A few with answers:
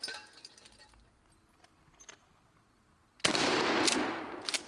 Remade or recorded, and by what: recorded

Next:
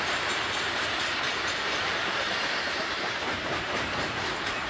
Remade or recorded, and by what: remade, vocoder, BigVGAN v2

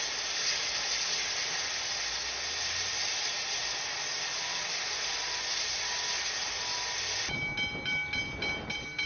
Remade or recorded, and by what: recorded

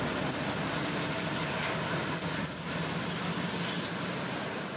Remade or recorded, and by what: recorded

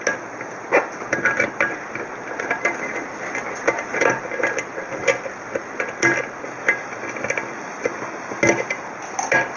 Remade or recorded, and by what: recorded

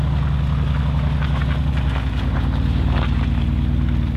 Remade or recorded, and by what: recorded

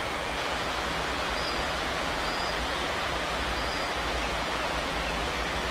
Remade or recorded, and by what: remade, vocoder, BigVGAN v2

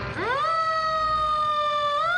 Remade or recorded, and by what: recorded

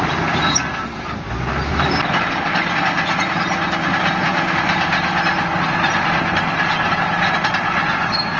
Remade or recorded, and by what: recorded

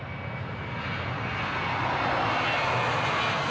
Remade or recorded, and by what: recorded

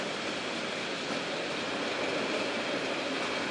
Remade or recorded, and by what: recorded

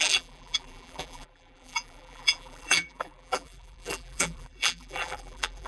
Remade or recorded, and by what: remade, vocoder, BigVGAN v2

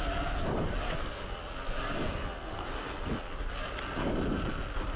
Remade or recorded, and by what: recorded